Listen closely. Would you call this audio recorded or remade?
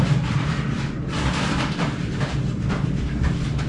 remade